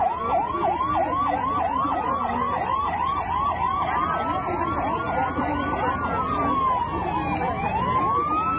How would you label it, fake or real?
real